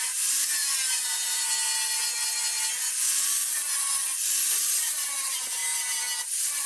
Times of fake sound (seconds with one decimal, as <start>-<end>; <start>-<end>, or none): 0.0-1.4; 4.5-5.6; 6.2-6.7